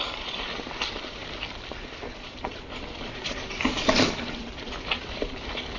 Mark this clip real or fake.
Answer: real